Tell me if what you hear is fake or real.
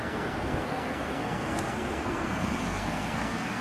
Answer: fake